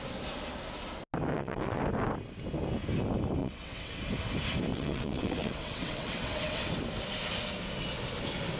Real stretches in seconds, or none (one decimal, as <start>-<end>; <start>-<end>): 0.0-1.3; 1.8-3.4; 4.0-4.7; 6.7-8.6

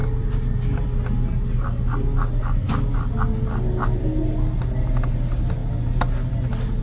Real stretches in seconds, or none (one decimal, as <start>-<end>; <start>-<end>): 0.0-6.8

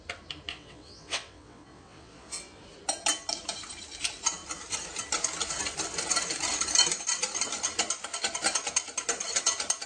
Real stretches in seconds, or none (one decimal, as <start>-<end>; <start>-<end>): 0.0-0.5; 2.6-9.9